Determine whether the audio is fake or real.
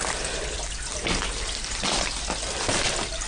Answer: real